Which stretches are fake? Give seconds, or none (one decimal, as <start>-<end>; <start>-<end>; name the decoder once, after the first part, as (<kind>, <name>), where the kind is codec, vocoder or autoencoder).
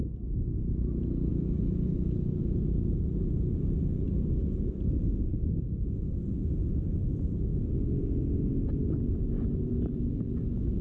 7.5-9.5 (vocoder, Vocos)